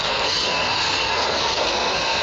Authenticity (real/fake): fake